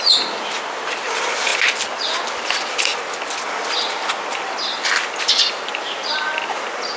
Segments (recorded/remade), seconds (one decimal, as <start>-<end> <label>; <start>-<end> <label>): 0.0-7.0 recorded